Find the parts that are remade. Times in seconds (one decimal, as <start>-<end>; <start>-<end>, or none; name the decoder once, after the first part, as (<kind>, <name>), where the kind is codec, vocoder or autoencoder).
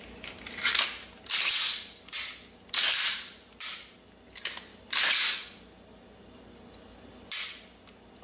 none